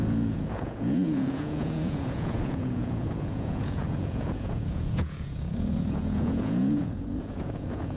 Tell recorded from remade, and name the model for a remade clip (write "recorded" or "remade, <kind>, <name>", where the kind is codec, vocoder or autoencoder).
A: remade, vocoder, Vocos